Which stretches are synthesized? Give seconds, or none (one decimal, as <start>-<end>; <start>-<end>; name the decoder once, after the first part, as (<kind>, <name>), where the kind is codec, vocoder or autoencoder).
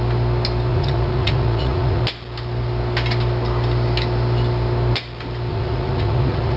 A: 0.7-2.0 (vocoder, Vocos); 5.5-6.6